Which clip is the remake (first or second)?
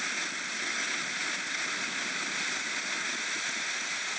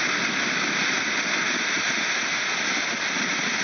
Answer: first